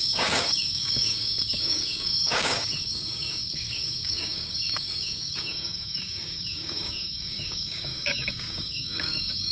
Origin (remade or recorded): remade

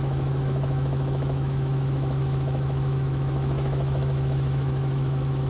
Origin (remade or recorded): remade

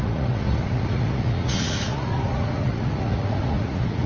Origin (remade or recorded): remade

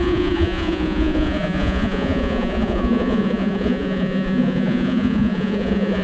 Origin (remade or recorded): remade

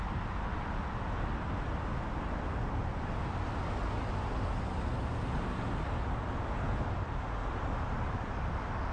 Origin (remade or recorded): recorded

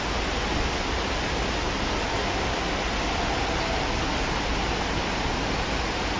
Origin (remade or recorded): recorded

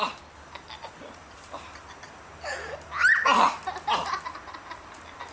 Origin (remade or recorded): recorded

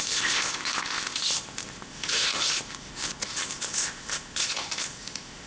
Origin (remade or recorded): remade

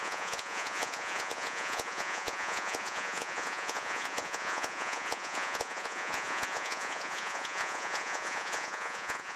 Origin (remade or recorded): remade